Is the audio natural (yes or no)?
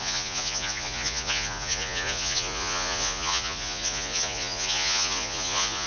no